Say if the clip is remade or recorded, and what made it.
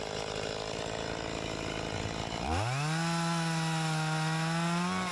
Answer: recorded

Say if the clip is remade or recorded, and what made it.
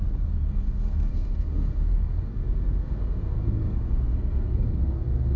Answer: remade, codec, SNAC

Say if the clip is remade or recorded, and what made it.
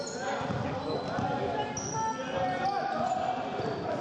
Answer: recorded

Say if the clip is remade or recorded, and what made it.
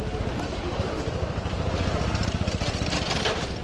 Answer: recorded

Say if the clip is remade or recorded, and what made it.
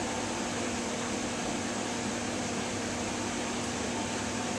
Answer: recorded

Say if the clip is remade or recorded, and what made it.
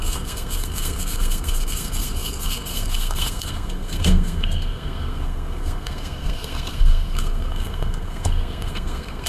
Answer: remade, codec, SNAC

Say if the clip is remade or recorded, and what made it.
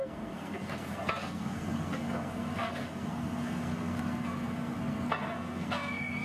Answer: remade, codec, SNAC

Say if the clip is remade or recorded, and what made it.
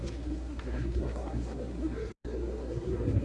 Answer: remade, codec, SNAC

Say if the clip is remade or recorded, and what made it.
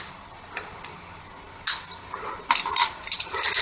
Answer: recorded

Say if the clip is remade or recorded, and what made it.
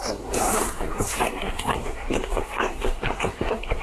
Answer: remade, codec, SNAC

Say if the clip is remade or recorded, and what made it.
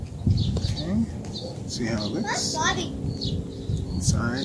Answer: recorded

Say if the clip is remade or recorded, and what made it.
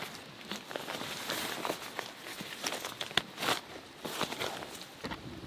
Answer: recorded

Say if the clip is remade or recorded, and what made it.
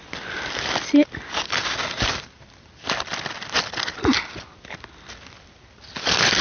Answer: recorded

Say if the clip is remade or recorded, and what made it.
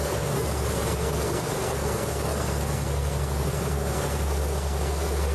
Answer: remade, codec, SNAC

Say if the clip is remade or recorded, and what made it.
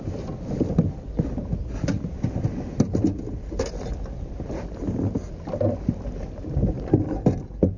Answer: recorded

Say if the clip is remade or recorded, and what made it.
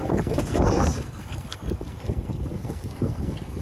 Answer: remade, codec, SNAC